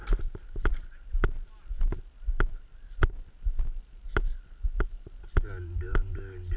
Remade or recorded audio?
recorded